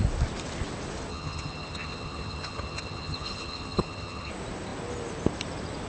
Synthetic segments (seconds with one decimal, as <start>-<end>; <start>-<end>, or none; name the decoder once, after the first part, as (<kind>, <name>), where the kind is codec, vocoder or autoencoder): 1.1-4.3 (vocoder, HiFi-GAN)